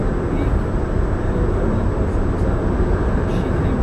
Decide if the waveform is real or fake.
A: real